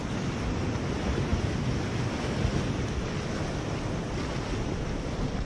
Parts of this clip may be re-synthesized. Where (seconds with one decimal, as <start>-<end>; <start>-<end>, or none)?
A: none